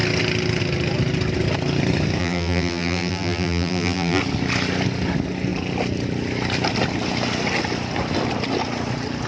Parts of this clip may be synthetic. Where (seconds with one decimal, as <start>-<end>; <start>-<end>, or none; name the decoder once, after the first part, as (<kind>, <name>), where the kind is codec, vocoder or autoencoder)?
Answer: 2.2-4.2 (vocoder, BigVGAN v2)